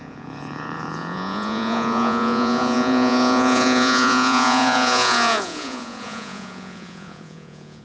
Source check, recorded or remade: remade